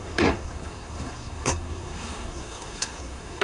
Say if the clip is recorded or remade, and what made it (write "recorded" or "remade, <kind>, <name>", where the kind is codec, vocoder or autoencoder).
remade, codec, SNAC